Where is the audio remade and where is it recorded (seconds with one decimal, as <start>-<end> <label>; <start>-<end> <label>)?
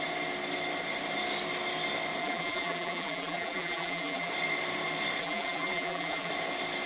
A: 0.0-2.2 recorded; 2.2-4.3 remade; 4.3-5.2 recorded; 5.2-6.3 remade; 6.3-6.9 recorded